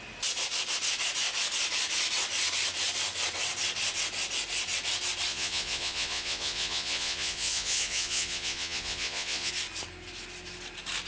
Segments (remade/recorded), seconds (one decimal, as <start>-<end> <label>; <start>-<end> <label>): 0.0-5.3 recorded; 5.3-9.5 remade; 9.5-11.1 recorded